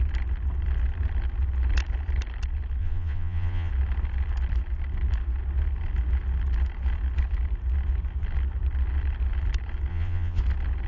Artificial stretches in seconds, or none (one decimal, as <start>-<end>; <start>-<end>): 2.8-3.7; 9.9-10.4